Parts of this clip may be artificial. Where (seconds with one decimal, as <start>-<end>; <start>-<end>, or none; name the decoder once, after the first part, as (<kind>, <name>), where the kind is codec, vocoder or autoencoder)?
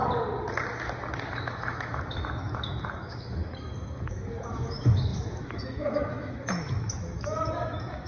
1.3-8.1 (autoencoder, DAC-VAE)